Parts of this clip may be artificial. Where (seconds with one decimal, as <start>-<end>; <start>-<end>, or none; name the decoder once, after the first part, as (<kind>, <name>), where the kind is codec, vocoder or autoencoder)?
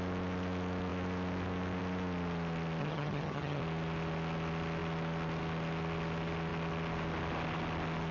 2.8-3.6 (vocoder, HiFi-GAN)